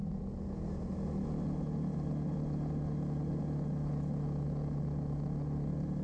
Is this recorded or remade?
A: recorded